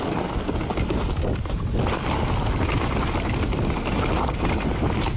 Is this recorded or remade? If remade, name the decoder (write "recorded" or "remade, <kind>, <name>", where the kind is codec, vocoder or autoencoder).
recorded